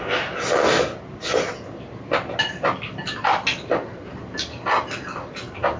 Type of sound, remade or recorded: recorded